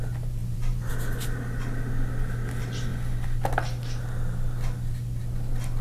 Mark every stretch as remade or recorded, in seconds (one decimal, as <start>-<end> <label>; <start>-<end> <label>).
0.0-0.4 recorded; 0.4-0.9 remade; 0.9-5.8 recorded